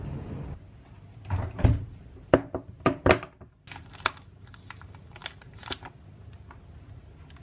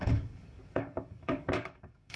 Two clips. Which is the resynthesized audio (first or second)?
second